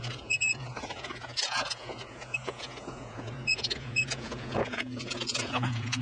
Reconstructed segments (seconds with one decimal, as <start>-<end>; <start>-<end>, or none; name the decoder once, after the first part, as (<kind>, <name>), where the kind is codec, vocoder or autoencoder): 0.0-6.0 (vocoder, Vocos)